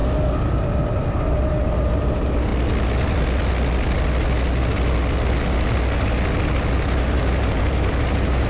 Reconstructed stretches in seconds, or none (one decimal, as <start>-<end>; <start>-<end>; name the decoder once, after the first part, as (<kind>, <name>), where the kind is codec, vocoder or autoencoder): 0.6-2.5 (vocoder, BigVGAN v2); 7.0-8.5